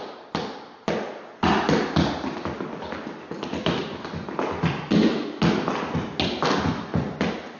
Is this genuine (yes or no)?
yes